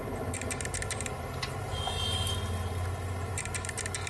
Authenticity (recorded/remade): recorded